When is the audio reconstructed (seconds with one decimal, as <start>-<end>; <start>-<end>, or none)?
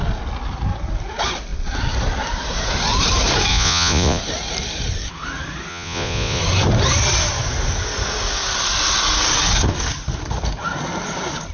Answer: 3.5-4.2; 5.7-6.4